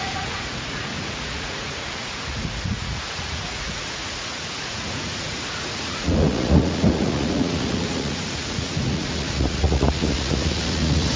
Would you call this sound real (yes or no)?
no